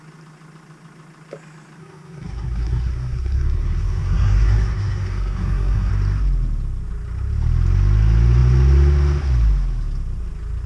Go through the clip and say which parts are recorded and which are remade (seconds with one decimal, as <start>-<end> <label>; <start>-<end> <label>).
0.0-1.8 recorded; 1.8-5.9 remade; 5.9-10.7 recorded